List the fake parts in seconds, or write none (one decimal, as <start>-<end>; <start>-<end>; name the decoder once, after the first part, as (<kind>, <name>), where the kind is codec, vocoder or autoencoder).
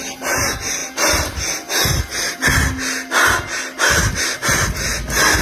none